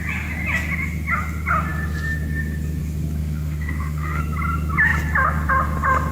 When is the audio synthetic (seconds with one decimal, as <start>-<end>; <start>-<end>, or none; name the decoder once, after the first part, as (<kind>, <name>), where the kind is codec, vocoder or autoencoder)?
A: 3.2-4.2 (autoencoder, DAC-VAE)